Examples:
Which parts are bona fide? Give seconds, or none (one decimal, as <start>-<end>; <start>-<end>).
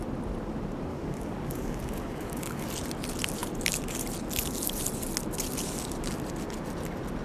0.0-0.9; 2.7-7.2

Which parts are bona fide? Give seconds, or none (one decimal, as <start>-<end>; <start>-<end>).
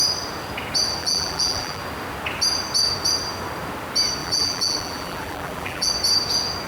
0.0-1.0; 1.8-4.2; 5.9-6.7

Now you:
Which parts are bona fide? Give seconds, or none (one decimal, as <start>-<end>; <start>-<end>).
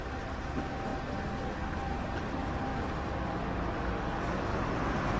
0.0-2.7; 3.3-4.5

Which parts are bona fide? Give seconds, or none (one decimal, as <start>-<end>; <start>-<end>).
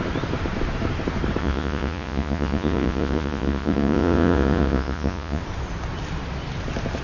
0.0-1.4; 5.4-7.0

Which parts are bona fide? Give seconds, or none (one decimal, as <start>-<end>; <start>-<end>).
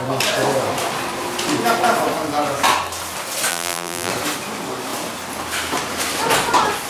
0.0-3.5; 4.1-6.9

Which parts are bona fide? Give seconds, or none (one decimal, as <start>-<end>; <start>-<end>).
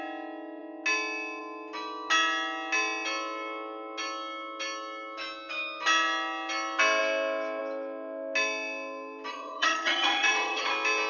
0.0-9.3; 10.7-11.1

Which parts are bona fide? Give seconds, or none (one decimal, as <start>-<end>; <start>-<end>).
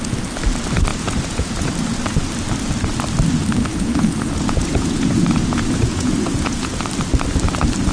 0.0-0.9; 1.7-3.7; 6.7-7.9